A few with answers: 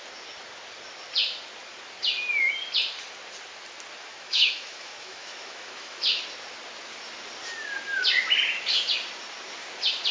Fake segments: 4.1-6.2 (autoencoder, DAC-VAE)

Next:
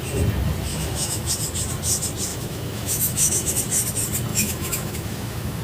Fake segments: 0.7-1.3 (autoencoder, DAC-VAE); 2.3-3.5; 4.3-5.6

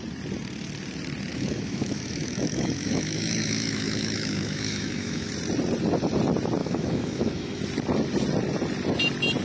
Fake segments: 1.3-5.3 (autoencoder, DAC-VAE); 6.6-7.6

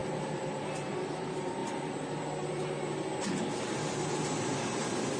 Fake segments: none

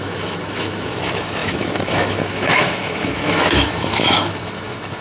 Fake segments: 0.0-5.0 (autoencoder, DAC-VAE)